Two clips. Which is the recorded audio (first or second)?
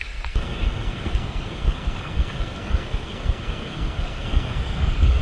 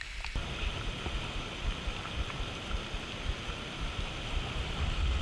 second